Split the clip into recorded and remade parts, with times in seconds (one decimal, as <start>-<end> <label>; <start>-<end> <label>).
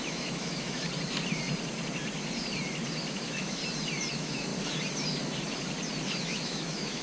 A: 0.0-0.8 remade; 0.8-3.1 recorded; 3.1-3.6 remade; 3.6-4.1 recorded; 4.1-4.5 remade; 4.5-6.2 recorded; 6.2-7.0 remade